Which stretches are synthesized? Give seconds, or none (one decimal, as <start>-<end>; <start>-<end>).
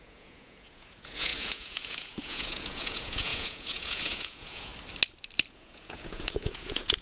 0.0-4.7; 5.5-7.0